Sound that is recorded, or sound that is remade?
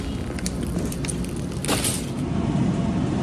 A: recorded